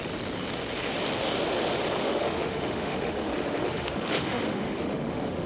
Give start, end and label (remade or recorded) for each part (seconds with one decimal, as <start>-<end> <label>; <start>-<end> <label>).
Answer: 0.0-2.0 recorded; 2.0-5.5 remade